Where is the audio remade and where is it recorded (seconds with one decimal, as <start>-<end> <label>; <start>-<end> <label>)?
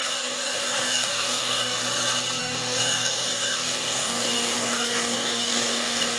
0.0-1.8 remade; 1.8-2.4 recorded; 2.4-6.2 remade